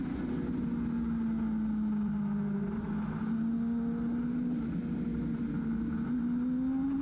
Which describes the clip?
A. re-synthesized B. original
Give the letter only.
B